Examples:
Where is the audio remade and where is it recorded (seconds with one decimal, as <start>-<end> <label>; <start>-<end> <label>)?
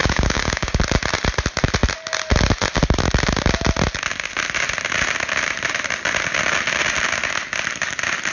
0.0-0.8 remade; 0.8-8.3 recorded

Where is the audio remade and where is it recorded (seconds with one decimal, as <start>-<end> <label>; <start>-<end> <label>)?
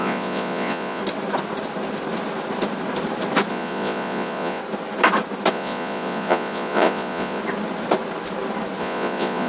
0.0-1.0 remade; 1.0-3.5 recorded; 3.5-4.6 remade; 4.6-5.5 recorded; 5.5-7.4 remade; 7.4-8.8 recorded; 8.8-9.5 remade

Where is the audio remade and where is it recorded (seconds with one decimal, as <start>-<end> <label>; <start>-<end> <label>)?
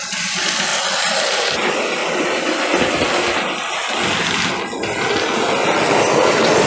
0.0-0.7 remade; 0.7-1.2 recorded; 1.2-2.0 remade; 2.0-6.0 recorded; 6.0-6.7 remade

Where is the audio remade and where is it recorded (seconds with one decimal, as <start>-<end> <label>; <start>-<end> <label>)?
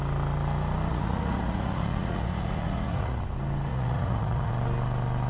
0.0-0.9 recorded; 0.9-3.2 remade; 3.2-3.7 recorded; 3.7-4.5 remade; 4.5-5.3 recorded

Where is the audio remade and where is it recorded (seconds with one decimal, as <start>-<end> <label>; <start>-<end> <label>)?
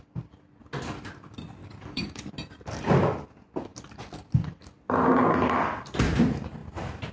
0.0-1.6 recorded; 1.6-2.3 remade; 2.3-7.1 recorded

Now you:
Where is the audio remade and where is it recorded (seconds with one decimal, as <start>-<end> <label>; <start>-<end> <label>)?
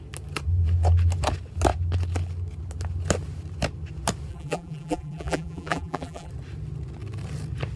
0.0-4.3 recorded; 4.3-6.3 remade; 6.3-7.8 recorded